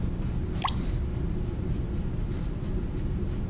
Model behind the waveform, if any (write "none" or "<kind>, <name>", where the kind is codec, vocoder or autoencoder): none